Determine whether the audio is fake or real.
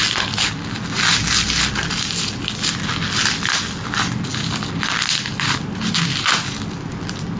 real